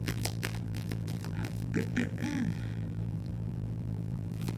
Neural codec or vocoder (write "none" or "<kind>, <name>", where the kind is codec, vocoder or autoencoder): vocoder, BigVGAN v2